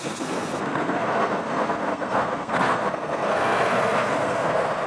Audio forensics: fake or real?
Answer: fake